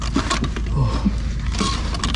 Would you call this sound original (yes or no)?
yes